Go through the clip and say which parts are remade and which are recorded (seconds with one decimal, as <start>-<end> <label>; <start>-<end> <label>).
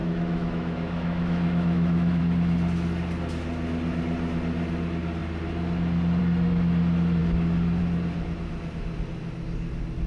0.0-2.2 remade; 2.2-10.1 recorded